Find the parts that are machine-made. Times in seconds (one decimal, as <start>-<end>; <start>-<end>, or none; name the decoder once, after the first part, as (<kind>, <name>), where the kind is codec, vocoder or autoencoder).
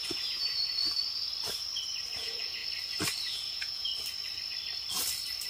0.0-0.6 (vocoder, Vocos); 2.2-2.6; 3.3-3.9